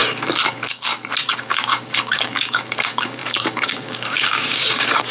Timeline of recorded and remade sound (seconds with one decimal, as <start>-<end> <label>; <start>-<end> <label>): 0.0-0.5 recorded; 0.5-0.9 remade; 0.9-1.4 recorded; 1.4-5.1 remade